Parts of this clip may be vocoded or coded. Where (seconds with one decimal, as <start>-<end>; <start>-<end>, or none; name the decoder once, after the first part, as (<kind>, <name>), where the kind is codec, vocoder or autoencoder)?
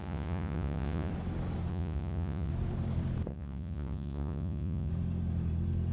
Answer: 0.0-1.1 (vocoder, Vocos); 1.7-2.5; 3.3-4.9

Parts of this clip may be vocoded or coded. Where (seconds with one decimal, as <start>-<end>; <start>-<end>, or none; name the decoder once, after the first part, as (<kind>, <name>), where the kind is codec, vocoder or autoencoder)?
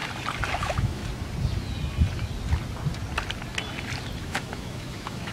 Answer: 0.6-1.0 (autoencoder, DAC-VAE); 4.2-5.3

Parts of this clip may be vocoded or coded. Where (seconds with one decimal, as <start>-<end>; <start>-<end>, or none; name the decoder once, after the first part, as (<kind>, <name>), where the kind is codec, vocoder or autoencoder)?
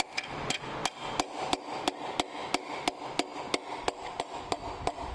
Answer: none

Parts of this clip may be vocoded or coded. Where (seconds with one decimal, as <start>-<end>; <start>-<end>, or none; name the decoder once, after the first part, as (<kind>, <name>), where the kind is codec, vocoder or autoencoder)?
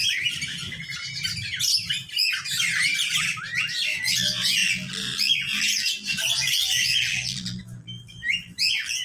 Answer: 4.0-9.0 (vocoder, BigVGAN v2)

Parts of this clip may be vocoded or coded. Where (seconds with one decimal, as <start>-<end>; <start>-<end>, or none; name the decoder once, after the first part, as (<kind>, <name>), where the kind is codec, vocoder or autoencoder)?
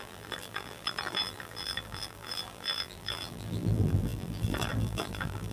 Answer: 0.0-5.5 (vocoder, BigVGAN v2)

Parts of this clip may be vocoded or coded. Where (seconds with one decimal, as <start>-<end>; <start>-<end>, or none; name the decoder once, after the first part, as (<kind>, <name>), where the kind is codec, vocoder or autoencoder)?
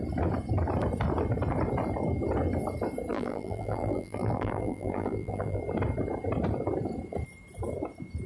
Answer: 3.1-5.6 (vocoder, BigVGAN v2)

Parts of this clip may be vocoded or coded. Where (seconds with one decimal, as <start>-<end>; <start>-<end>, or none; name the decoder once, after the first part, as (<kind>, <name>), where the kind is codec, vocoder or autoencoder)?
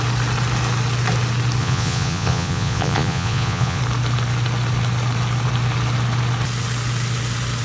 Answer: 1.6-3.8 (vocoder, Vocos)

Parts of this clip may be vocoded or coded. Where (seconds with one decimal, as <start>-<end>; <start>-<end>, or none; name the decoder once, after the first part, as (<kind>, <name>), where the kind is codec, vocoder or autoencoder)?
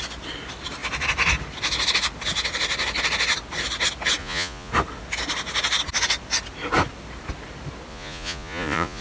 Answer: 4.2-4.7 (vocoder, Vocos); 7.9-9.0